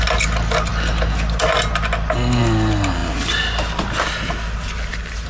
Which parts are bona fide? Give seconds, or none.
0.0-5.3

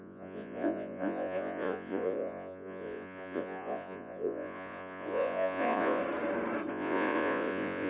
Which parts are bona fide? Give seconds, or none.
6.0-6.7

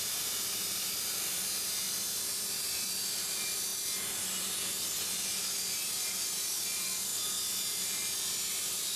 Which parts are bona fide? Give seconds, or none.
3.7-6.6; 7.1-8.5